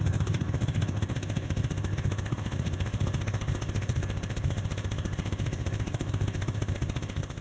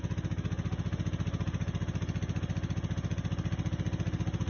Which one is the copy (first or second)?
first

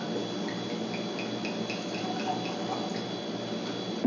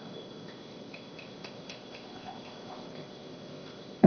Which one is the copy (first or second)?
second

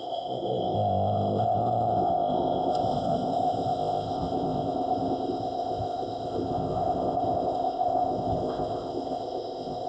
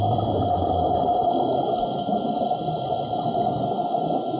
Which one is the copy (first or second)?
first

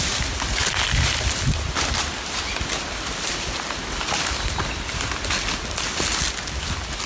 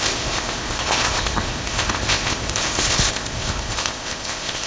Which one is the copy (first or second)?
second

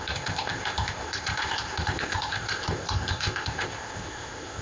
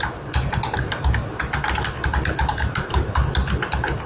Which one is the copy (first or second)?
first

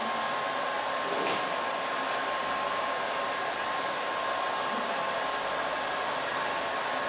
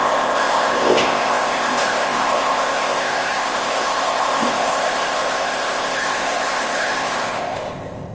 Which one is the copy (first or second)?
second